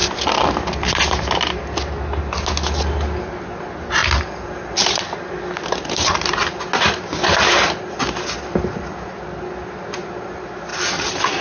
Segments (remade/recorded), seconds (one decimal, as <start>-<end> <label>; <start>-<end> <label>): 0.0-11.4 recorded